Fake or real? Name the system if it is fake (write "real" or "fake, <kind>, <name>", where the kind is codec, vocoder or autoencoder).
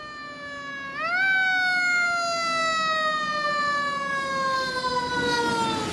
real